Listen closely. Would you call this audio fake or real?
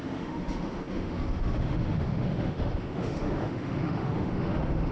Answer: fake